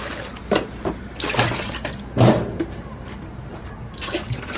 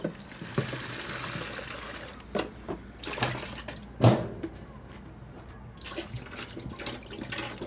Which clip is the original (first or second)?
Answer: second